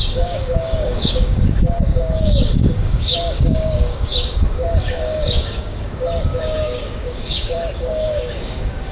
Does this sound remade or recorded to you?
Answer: remade